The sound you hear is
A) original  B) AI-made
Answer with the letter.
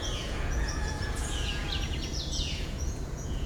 B